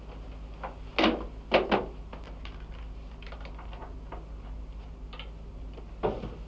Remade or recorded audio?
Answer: recorded